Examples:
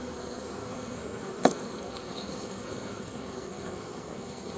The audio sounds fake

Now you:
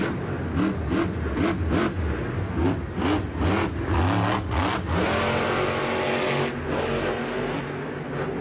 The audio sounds real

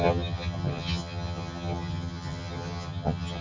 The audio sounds fake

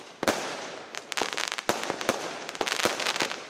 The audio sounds real